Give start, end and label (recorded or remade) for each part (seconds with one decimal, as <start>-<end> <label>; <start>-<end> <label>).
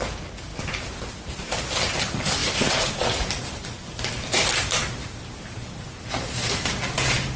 0.0-2.4 recorded; 2.4-6.5 remade; 6.5-7.4 recorded